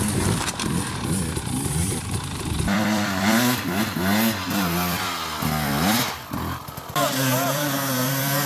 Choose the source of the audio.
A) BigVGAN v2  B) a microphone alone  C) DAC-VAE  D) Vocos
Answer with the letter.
A